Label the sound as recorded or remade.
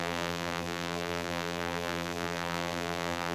remade